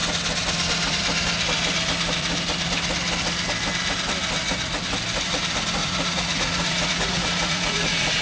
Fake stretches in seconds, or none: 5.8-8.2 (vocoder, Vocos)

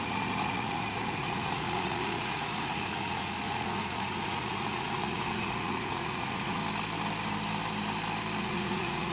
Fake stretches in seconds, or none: 0.0-6.6 (vocoder, Vocos); 8.4-9.1